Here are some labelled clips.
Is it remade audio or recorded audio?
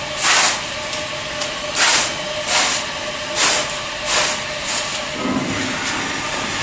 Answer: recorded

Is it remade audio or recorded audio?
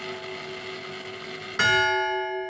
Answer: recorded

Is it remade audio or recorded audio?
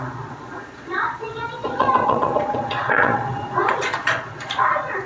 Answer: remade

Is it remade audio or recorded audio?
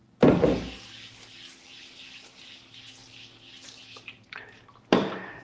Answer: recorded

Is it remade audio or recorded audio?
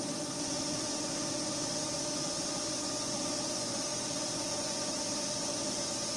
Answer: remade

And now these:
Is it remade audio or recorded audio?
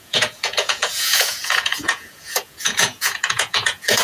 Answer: remade